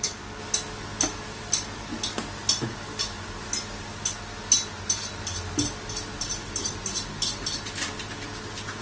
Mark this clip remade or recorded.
recorded